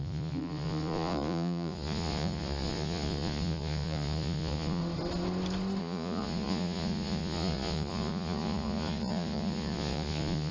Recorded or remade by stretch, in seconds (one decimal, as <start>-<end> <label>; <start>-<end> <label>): 0.0-4.8 remade; 4.8-5.8 recorded; 5.8-10.5 remade